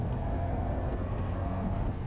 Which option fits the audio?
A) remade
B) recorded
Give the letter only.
A